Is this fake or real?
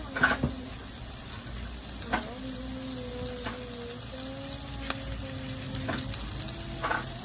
real